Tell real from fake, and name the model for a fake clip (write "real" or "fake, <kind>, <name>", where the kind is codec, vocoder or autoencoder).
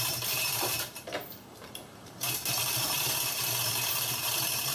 fake, vocoder, BigVGAN v2